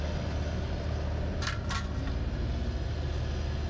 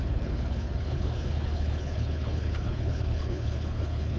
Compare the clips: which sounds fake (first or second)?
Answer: second